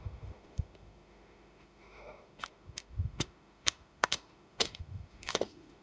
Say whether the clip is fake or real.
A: fake